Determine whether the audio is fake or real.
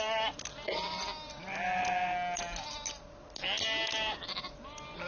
real